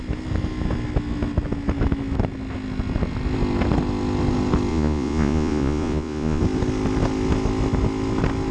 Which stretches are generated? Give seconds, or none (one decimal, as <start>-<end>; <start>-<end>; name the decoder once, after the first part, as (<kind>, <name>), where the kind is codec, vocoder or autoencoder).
4.7-6.4 (vocoder, Vocos)